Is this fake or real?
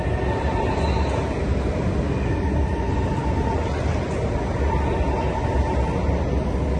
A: real